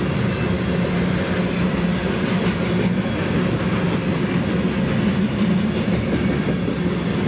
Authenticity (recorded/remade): recorded